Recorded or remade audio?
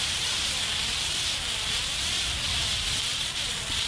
recorded